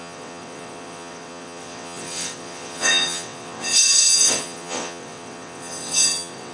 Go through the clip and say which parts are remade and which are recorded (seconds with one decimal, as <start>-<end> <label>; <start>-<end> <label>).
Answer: 0.0-6.5 remade